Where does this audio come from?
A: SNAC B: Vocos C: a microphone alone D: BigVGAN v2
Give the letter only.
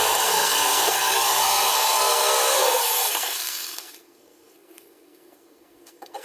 A